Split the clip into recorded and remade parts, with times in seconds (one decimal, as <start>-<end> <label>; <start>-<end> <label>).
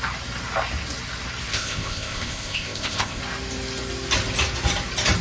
0.0-1.5 recorded; 1.5-3.2 remade; 3.2-5.2 recorded